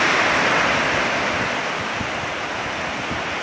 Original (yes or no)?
yes